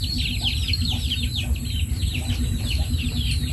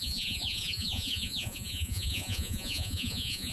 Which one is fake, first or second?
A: second